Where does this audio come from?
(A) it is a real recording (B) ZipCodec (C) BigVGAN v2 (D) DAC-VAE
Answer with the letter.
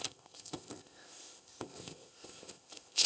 B